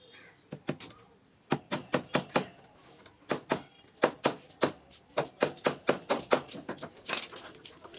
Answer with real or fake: real